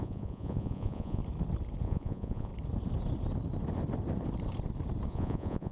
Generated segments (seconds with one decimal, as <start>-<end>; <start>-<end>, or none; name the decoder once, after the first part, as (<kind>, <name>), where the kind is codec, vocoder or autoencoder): 0.0-1.2 (vocoder, Vocos); 1.8-2.5; 5.1-5.7